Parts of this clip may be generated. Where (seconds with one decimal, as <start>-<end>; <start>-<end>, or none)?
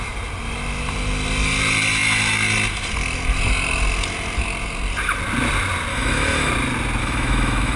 5.9-6.5; 7.0-7.8